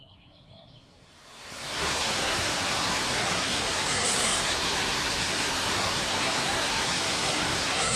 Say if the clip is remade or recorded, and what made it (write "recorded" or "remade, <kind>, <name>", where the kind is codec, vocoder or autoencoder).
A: remade, codec, SNAC